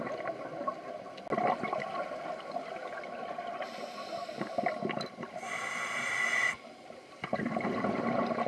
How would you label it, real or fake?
real